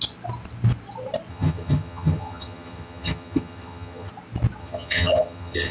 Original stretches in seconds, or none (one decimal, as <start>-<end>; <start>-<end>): 0.0-1.3; 4.1-4.6